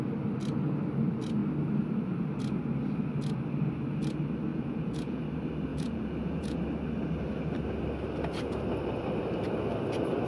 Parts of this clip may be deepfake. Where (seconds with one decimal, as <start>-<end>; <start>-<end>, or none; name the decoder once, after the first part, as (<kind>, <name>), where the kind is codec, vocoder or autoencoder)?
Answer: 4.5-5.2 (vocoder, Vocos); 5.7-6.6